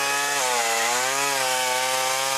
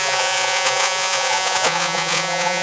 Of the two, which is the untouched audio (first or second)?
first